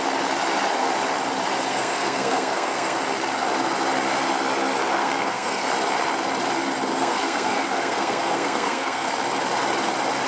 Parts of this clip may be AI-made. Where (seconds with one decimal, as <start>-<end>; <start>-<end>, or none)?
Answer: 1.7-3.0; 5.0-5.7; 6.9-9.1